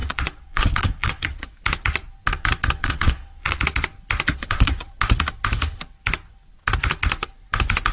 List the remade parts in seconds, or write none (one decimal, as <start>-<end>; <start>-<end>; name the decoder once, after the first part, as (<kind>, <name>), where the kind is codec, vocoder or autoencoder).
0.0-1.5 (vocoder, Vocos); 2.8-3.6; 4.3-4.9